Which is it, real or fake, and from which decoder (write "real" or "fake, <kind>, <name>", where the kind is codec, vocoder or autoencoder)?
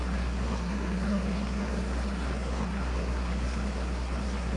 fake, codec, SNAC